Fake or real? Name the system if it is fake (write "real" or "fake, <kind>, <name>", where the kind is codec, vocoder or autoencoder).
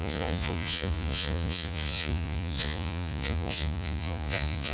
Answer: fake, vocoder, Vocos